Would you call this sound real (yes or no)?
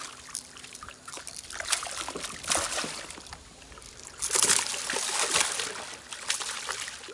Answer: yes